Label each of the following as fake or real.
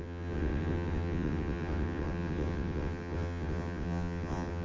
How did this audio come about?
fake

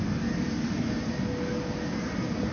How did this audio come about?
real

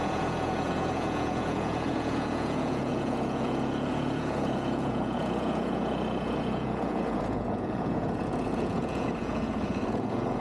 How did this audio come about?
fake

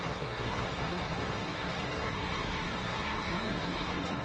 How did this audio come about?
fake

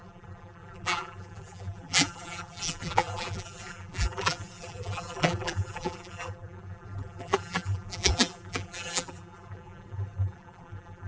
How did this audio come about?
fake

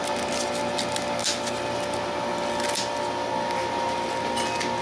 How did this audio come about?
real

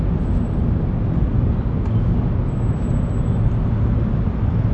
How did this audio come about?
real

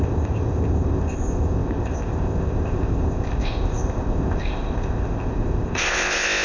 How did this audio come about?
fake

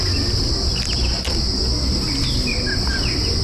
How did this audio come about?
real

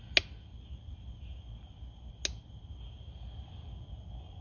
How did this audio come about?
real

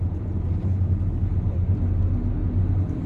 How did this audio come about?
real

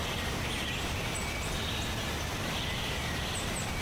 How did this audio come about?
real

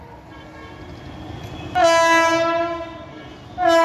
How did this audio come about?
real